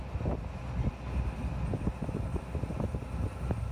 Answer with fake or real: real